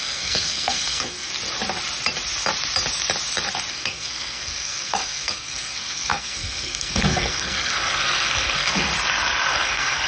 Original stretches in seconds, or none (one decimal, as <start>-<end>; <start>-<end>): 1.3-3.7; 8.9-9.5